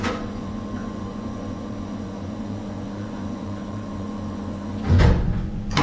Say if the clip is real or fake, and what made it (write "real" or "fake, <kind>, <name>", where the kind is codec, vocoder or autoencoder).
fake, vocoder, Vocos